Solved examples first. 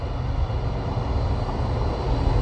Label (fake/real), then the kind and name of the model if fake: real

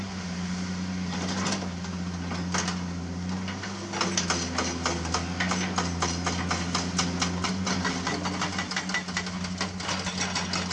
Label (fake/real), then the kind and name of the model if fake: real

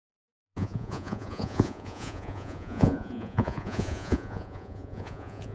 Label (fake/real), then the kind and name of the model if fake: fake, vocoder, Vocos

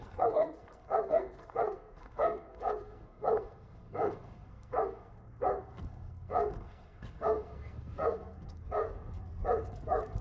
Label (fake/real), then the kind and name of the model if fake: fake, codec, SNAC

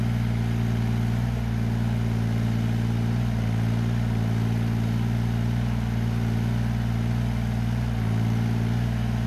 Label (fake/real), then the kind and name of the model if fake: real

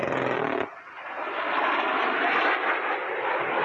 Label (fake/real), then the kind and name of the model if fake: real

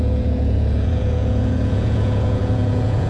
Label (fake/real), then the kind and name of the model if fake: fake, vocoder, Vocos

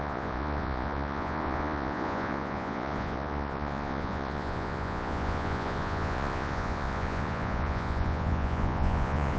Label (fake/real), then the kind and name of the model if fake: fake, vocoder, Vocos